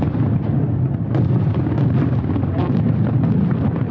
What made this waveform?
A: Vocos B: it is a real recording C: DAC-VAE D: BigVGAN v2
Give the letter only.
B